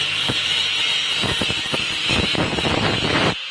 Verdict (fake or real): fake